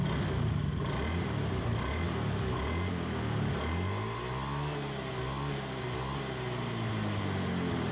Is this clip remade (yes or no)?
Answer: no